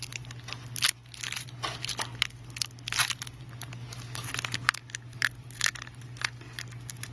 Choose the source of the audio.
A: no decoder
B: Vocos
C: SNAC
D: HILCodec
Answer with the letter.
A